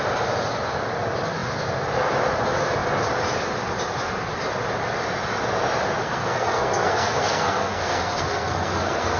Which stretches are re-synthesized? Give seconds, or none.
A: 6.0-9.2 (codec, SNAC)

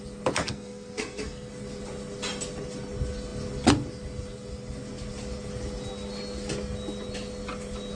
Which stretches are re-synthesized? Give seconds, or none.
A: 0.4-1.5 (codec, SNAC)

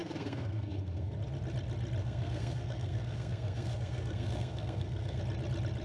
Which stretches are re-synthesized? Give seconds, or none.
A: 0.0-1.1 (codec, SNAC); 2.0-5.2

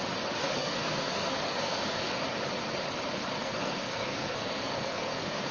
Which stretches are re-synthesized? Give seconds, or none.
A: 0.4-2.1 (codec, SNAC); 3.4-5.5